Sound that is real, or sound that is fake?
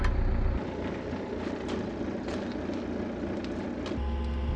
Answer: real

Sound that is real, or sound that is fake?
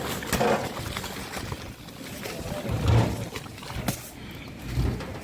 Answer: real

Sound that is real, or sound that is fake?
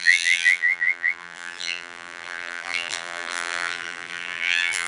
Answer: fake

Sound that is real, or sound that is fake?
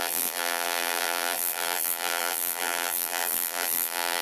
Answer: fake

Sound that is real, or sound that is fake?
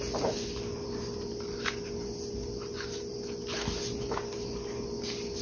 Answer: real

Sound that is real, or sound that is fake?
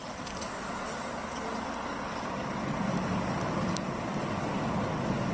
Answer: real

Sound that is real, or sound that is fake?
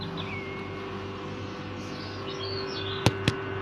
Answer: real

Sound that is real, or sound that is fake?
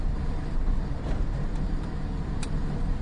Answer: fake